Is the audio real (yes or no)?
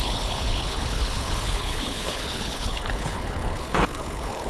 no